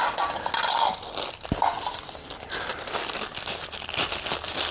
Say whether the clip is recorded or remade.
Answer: recorded